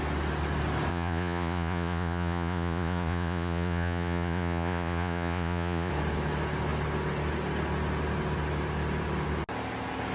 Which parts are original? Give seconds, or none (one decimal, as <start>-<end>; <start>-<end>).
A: 0.0-0.9; 5.9-10.1